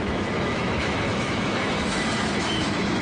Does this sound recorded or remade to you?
remade